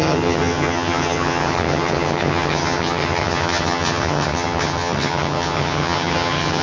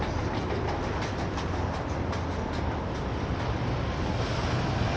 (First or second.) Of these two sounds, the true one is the second